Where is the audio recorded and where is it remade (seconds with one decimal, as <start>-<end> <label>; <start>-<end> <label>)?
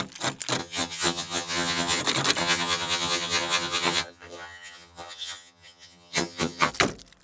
0.0-0.6 recorded; 0.6-2.0 remade; 2.0-2.4 recorded; 2.4-6.7 remade; 6.7-7.2 recorded